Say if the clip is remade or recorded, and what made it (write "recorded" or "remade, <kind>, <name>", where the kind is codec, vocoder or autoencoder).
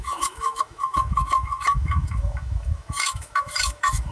remade, autoencoder, DAC-VAE